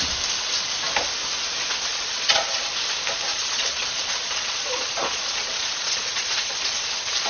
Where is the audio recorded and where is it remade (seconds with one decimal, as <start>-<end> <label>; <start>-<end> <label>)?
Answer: 0.0-1.9 recorded; 1.9-2.7 remade; 2.7-3.3 recorded; 3.3-7.3 remade